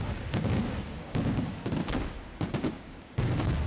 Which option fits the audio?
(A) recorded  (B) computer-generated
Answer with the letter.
B